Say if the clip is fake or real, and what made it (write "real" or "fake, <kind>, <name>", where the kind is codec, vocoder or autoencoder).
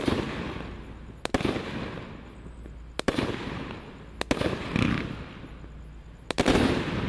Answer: real